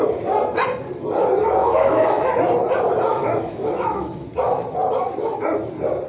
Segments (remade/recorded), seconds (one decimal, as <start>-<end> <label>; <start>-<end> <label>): 0.0-1.6 recorded; 1.6-2.3 remade; 2.3-3.1 recorded; 3.1-4.3 remade; 4.3-6.1 recorded